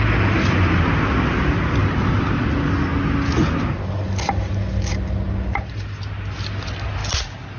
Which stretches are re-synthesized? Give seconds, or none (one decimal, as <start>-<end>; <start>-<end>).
1.8-2.5